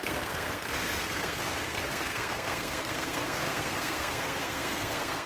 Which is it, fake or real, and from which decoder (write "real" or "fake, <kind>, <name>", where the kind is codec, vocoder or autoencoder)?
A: fake, codec, SNAC